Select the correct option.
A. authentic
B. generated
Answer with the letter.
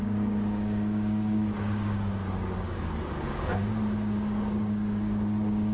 B